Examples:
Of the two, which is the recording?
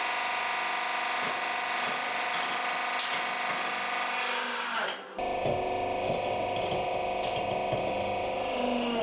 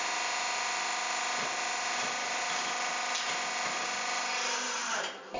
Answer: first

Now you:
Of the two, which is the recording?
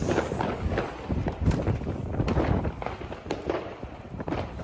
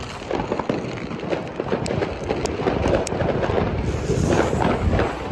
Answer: second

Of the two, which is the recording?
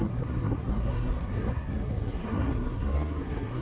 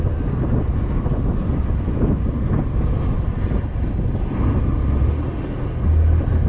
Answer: second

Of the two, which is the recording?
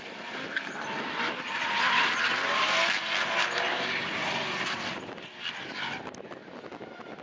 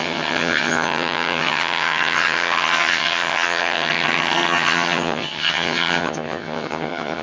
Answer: first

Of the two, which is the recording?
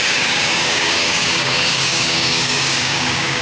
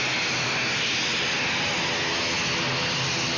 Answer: second